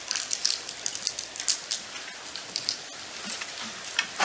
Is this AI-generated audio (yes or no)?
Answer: no